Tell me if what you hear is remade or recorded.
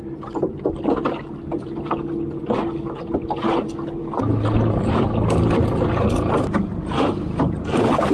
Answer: recorded